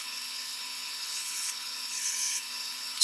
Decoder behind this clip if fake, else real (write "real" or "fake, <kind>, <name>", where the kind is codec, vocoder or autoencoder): fake, codec, HILCodec